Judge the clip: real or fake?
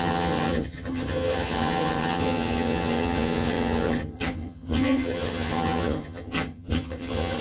fake